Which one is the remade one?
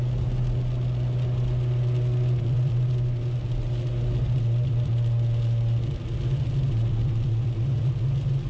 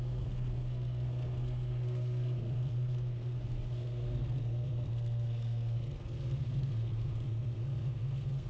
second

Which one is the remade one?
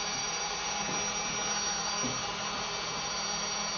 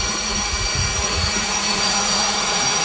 second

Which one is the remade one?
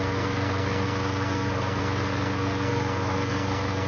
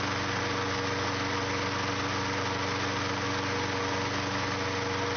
first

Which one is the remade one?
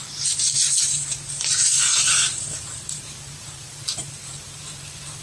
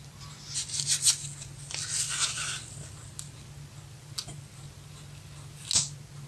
first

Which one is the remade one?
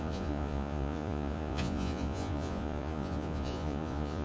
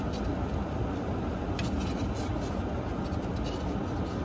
first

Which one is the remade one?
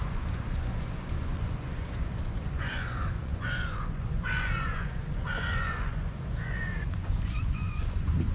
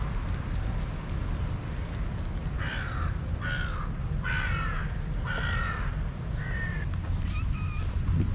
first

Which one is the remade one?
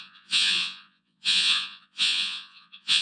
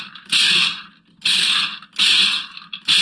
first